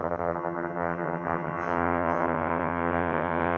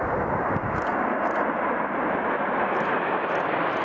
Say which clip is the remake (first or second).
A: first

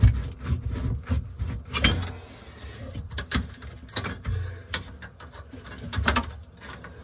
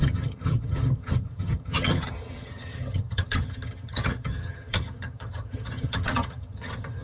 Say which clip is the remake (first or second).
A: second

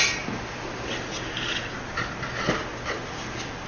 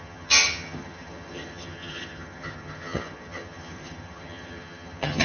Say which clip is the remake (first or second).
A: second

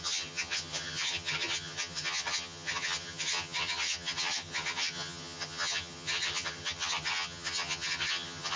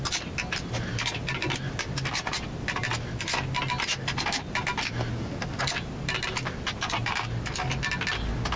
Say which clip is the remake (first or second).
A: first